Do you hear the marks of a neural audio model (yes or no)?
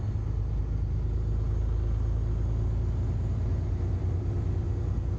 no